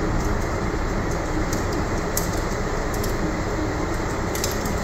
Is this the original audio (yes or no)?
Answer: no